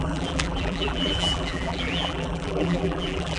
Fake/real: fake